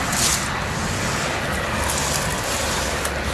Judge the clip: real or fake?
real